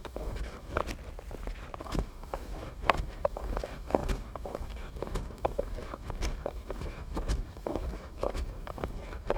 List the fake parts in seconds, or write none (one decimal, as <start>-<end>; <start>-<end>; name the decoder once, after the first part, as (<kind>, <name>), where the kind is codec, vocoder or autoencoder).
0.0-0.8 (codec, DAC); 1.8-9.4